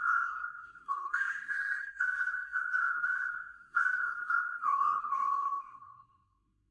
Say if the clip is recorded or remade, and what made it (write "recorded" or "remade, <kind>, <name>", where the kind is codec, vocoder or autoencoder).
remade, codec, SNAC